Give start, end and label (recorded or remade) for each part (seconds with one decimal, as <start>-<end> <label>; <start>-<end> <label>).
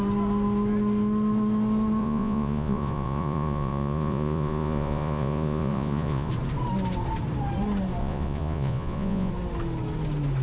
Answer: 0.0-2.0 recorded; 2.0-6.3 remade; 6.3-8.0 recorded; 8.0-9.3 remade; 9.3-10.4 recorded